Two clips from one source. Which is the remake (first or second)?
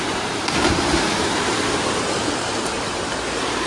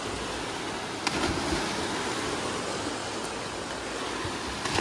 first